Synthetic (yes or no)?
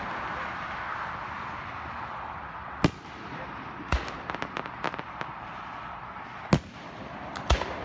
no